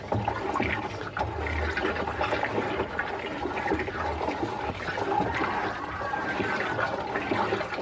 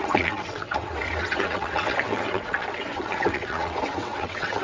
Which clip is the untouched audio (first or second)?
first